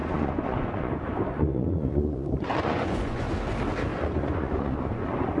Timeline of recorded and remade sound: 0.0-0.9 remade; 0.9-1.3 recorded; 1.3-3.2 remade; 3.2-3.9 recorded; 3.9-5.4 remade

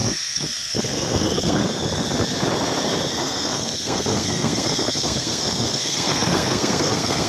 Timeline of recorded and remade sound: 0.0-1.8 remade; 1.8-3.2 recorded; 3.2-7.3 remade

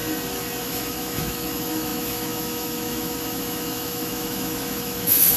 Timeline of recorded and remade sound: 0.0-0.6 recorded; 0.6-5.4 remade

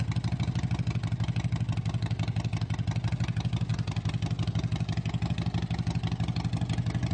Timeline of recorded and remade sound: 0.0-7.1 recorded

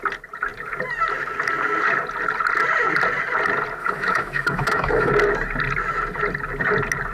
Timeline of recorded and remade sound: 0.0-3.8 recorded; 3.8-5.1 remade; 5.1-7.1 recorded

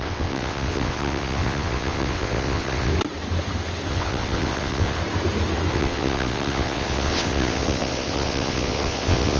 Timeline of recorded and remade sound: 0.0-2.9 remade; 2.9-3.9 recorded; 3.9-5.0 remade; 5.0-5.7 recorded; 5.7-9.4 remade

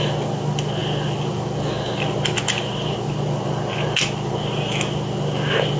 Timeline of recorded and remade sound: 0.0-5.8 recorded